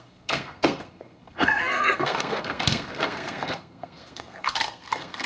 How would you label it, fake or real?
fake